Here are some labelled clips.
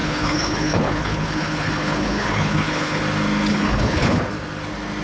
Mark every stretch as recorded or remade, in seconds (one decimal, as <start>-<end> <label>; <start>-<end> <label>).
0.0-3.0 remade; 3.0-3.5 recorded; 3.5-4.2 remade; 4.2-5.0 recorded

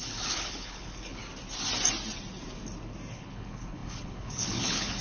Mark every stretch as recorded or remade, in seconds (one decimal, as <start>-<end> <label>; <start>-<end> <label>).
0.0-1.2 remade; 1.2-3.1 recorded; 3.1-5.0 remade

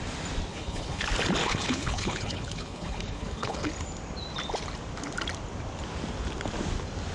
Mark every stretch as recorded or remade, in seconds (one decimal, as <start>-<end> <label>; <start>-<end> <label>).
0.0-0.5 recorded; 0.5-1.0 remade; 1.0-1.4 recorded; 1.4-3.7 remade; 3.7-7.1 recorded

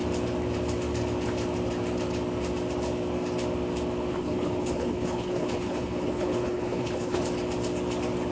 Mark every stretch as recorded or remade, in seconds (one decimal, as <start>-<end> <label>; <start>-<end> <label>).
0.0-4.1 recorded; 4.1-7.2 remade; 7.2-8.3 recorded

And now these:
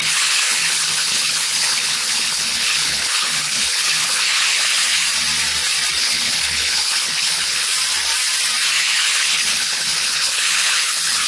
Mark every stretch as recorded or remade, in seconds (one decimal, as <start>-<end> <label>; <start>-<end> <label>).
0.0-5.0 remade; 5.0-6.0 recorded; 6.0-7.7 remade; 7.7-8.8 recorded; 8.8-11.3 remade

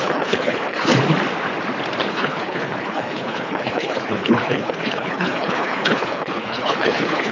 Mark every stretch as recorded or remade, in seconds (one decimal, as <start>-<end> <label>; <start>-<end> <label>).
0.0-0.9 remade; 0.9-2.1 recorded; 2.1-7.3 remade